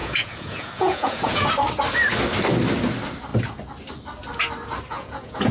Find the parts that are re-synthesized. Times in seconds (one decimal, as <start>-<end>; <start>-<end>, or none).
0.0-1.5; 4.9-5.5